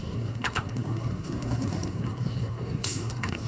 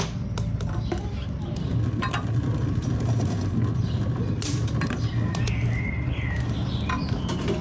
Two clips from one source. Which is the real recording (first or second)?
second